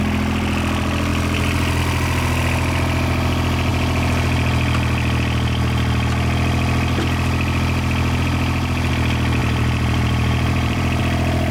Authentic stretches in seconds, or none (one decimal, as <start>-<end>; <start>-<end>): 0.0-9.4; 11.0-11.5